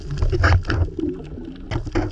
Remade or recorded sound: recorded